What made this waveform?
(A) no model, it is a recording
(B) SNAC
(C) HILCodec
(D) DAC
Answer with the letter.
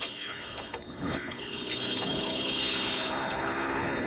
C